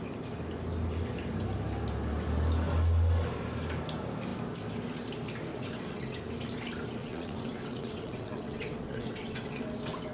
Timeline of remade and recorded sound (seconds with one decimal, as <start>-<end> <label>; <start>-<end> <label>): 0.0-5.5 recorded; 5.5-6.2 remade; 6.2-7.0 recorded; 7.0-9.6 remade; 9.6-10.1 recorded

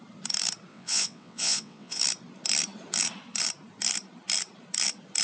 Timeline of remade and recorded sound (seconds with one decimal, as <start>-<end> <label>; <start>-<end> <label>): 0.0-0.7 recorded; 0.7-2.0 remade; 2.0-5.2 recorded

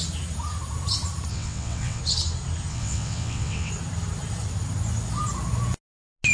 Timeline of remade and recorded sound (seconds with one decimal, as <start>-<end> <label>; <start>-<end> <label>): 0.0-1.3 recorded; 1.3-2.0 remade; 2.0-2.7 recorded; 2.7-3.7 remade; 3.7-6.3 recorded

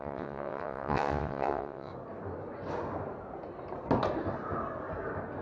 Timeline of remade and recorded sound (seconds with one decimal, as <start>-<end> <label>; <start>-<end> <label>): 0.0-1.9 remade; 1.9-5.4 recorded

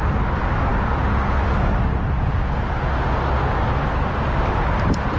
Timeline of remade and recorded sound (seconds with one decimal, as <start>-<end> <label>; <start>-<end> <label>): 0.0-5.2 recorded